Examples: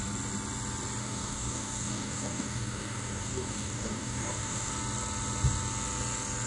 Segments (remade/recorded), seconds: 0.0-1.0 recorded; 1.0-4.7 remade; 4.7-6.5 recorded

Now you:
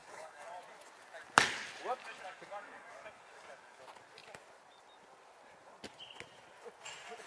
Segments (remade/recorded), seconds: 0.0-0.6 remade; 0.6-2.0 recorded; 2.0-3.8 remade; 3.8-7.3 recorded

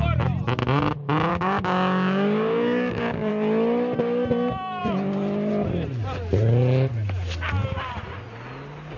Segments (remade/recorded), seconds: 0.0-1.3 recorded; 1.3-3.3 remade; 3.3-9.0 recorded

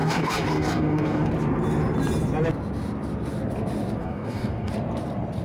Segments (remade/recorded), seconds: 0.0-1.3 remade; 1.3-4.0 recorded; 4.0-4.7 remade; 4.7-5.4 recorded

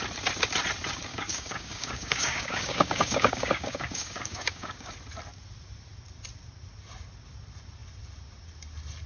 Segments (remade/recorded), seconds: 0.0-1.1 recorded; 1.1-4.9 remade; 4.9-9.1 recorded

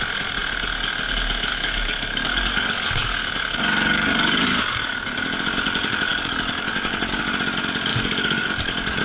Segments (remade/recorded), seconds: 0.0-1.5 recorded; 1.5-5.0 remade; 5.0-6.1 recorded; 6.1-7.2 remade; 7.2-7.9 recorded; 7.9-9.0 remade

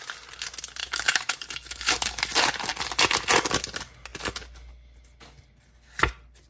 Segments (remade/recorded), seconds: 0.0-0.8 recorded; 0.8-2.2 remade; 2.2-6.5 recorded